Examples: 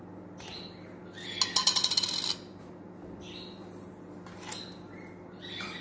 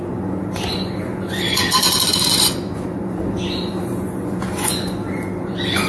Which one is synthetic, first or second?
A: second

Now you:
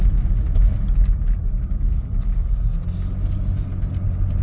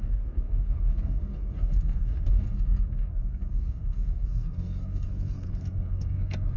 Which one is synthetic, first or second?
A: second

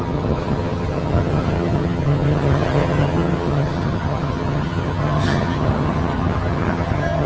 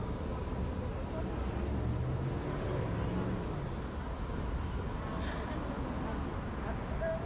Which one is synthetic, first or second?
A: first